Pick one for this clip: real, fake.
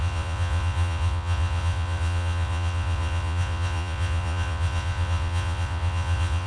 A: fake